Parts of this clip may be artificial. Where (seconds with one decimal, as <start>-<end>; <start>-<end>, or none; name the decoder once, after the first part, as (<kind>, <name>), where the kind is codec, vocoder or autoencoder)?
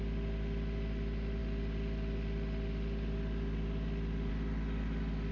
none